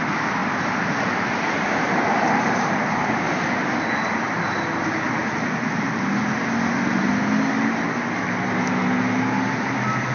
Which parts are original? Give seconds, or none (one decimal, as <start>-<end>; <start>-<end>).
0.0-0.4; 3.4-10.1